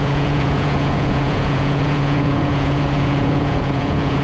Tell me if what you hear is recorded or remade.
remade